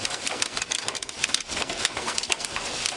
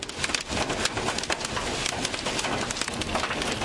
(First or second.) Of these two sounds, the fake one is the first